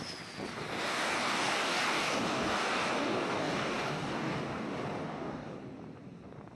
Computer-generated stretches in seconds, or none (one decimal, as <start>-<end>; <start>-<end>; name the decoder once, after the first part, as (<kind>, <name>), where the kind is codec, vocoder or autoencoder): 0.9-4.4 (codec, DAC); 5.0-5.5